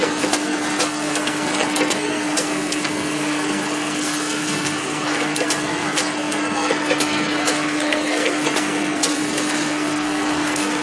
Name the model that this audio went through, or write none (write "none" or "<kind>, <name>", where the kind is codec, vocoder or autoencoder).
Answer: codec, SNAC